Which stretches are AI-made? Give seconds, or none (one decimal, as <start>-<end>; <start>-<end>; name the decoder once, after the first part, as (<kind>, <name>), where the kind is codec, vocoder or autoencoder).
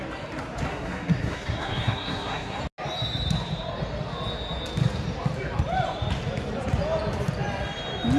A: 0.7-2.6 (codec, SNAC)